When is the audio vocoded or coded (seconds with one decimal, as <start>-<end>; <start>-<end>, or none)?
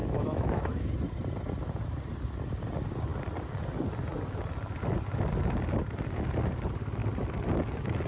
0.0-0.9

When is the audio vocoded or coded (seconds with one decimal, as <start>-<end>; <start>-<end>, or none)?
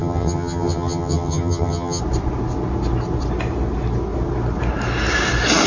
0.0-2.0